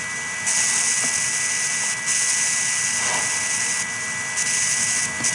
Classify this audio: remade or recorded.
recorded